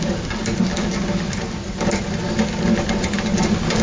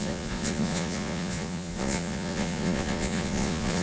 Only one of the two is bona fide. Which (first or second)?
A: first